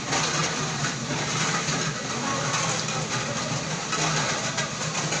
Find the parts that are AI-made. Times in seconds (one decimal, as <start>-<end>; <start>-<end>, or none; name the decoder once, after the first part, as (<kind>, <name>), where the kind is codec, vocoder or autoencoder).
none